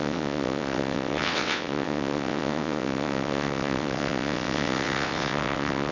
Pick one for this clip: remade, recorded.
remade